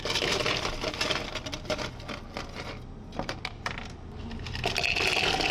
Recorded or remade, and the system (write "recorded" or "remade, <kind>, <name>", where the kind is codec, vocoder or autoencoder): recorded